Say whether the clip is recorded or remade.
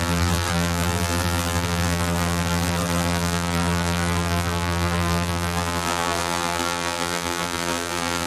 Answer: remade